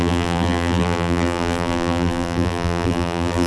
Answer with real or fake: fake